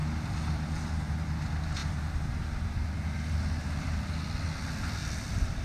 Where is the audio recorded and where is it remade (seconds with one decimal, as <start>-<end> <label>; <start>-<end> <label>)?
0.0-1.1 remade; 1.1-5.0 recorded; 5.0-5.6 remade